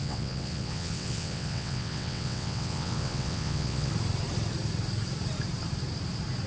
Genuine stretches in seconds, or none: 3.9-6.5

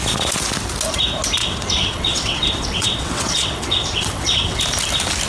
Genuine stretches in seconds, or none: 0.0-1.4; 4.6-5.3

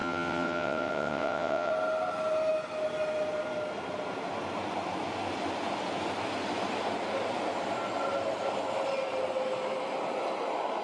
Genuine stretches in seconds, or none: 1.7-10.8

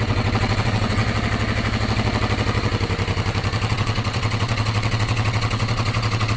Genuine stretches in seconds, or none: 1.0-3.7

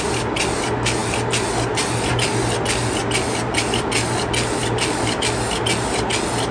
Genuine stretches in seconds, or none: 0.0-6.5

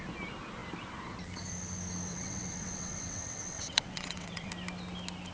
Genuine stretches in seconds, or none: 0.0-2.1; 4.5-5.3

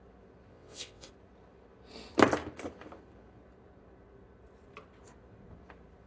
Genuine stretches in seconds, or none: 0.0-0.5; 1.1-6.1

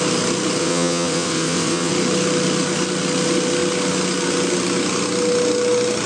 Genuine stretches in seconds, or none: 0.0-0.6; 1.9-6.1